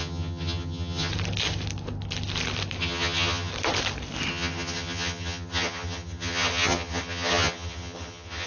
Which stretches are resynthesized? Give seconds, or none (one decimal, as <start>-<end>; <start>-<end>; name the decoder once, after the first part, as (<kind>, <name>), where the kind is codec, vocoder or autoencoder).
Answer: 0.0-1.1 (vocoder, HiFi-GAN); 2.8-3.5; 4.3-8.5